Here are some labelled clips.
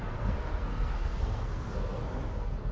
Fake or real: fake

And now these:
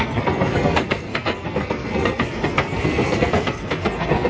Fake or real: fake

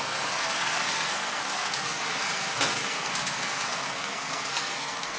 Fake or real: fake